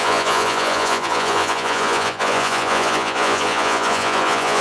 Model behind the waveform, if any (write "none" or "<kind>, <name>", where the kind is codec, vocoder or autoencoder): vocoder, Vocos